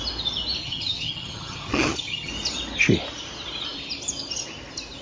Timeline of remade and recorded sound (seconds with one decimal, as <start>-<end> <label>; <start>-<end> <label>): 0.0-0.6 recorded; 0.6-2.3 remade; 2.3-5.0 recorded